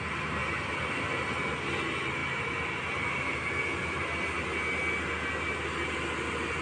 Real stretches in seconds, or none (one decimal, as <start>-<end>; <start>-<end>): 0.0-6.6

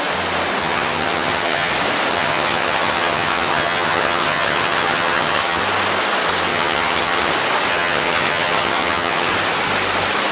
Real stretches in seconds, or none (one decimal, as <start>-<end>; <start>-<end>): 0.0-0.6; 1.7-2.1; 5.6-6.5; 7.3-7.7; 9.3-10.3